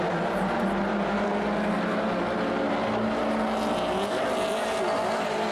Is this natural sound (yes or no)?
yes